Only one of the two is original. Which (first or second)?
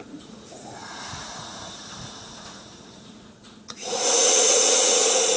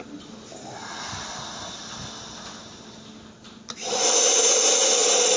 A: second